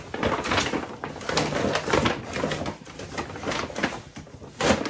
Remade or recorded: recorded